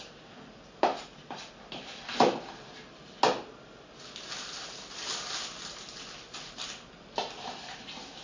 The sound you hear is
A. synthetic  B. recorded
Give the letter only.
B